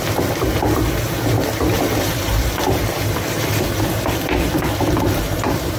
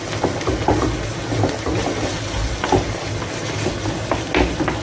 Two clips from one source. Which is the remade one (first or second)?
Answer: first